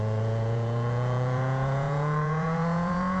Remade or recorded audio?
remade